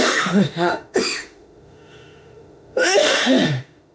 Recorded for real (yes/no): no